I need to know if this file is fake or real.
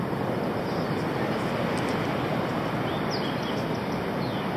real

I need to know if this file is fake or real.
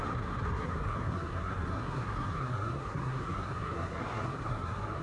fake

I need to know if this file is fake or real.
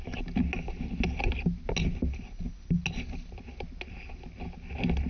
real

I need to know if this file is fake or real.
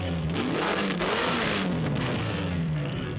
fake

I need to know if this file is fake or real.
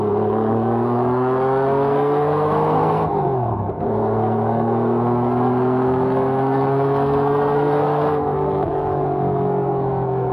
fake